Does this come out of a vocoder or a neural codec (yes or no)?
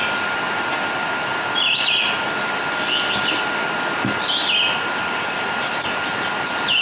no